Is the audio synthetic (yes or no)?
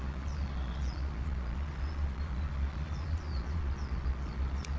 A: yes